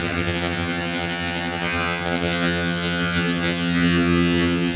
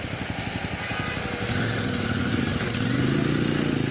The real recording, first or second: second